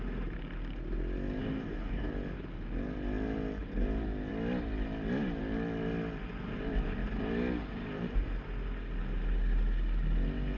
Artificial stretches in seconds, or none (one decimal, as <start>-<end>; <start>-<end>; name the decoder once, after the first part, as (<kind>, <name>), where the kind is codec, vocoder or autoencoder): 1.4-2.1 (codec, DAC)